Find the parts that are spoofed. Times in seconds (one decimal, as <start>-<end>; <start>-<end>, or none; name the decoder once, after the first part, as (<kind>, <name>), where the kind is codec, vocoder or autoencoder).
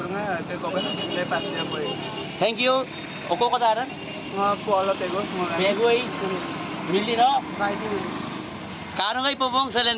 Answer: none